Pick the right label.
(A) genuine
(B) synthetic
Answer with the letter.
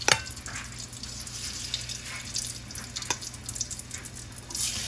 A